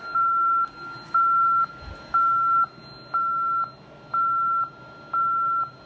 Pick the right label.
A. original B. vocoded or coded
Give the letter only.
A